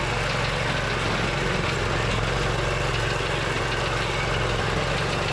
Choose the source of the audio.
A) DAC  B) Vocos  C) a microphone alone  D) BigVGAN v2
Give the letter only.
C